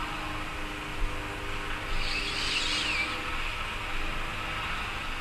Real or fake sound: real